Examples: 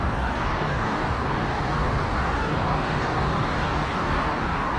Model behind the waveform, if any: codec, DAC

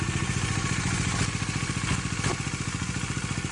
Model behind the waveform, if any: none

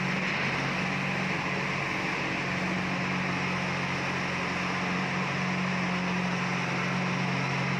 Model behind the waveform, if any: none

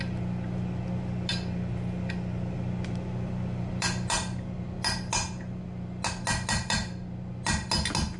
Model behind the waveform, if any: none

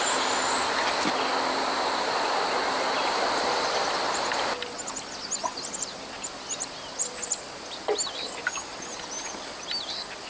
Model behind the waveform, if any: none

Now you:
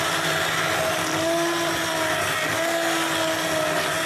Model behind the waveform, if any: none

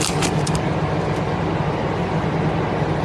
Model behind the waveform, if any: none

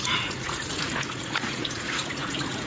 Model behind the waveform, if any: vocoder, Vocos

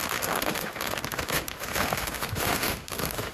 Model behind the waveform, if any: autoencoder, DAC-VAE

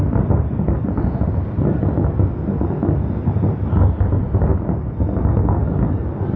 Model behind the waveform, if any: none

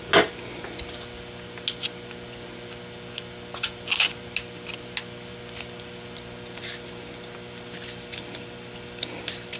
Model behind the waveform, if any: none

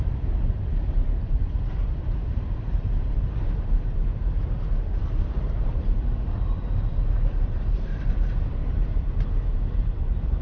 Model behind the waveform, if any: vocoder, BigVGAN v2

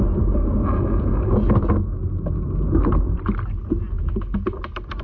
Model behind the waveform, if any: none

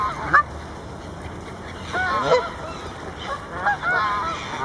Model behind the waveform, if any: none